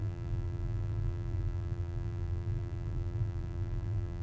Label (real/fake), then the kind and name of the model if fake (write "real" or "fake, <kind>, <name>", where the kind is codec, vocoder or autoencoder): fake, vocoder, BigVGAN v2